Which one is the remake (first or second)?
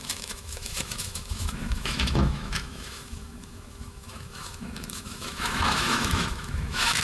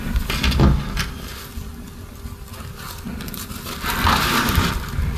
first